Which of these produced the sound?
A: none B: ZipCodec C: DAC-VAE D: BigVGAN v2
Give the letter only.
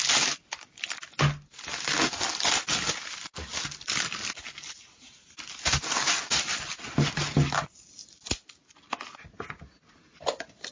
A